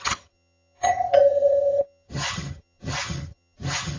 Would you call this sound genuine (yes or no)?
no